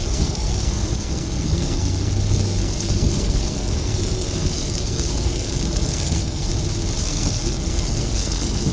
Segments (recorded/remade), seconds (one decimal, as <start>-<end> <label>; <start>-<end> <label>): 0.0-6.5 remade; 6.5-7.0 recorded; 7.0-8.7 remade